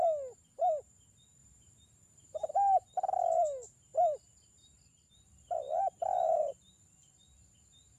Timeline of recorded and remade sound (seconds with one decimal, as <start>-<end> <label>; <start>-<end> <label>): 0.0-1.4 recorded; 1.4-2.5 remade; 2.5-3.9 recorded; 3.9-6.4 remade; 6.4-8.0 recorded